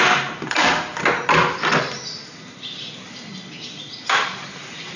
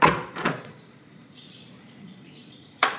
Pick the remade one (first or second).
second